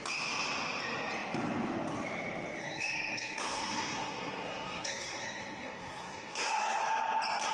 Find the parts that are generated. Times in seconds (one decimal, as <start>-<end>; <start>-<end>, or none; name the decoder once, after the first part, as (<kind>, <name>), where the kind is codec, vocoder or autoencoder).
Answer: 2.6-6.8 (codec, SNAC)